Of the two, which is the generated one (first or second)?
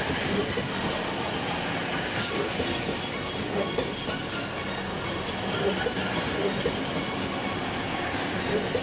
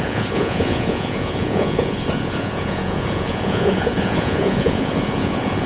second